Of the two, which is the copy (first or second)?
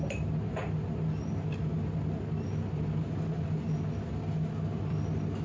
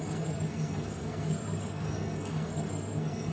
second